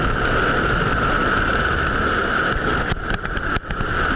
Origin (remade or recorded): recorded